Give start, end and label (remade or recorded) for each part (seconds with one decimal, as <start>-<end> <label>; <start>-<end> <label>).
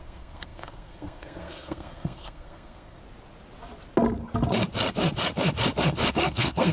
0.0-3.0 remade; 3.0-6.1 recorded; 6.1-6.7 remade